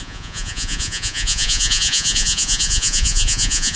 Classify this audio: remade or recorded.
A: remade